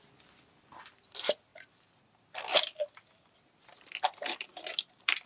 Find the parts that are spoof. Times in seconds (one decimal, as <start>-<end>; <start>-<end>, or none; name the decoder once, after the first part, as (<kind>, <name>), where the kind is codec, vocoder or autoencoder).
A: none